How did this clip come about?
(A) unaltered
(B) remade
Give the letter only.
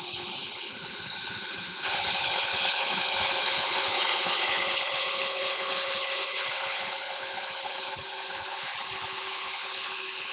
B